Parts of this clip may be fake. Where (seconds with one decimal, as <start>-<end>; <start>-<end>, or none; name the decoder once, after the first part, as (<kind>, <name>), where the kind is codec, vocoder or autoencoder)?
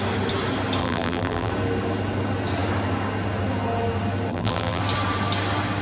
0.8-1.5 (vocoder, BigVGAN v2); 4.3-4.8